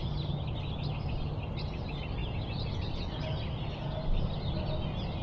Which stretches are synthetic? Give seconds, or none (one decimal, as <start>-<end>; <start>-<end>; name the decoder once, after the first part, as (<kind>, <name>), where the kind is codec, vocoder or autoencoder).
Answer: none